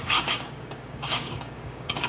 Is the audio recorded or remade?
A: remade